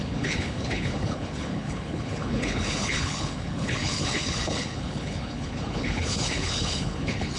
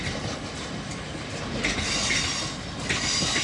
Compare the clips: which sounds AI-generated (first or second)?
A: first